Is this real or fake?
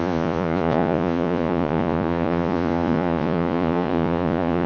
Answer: fake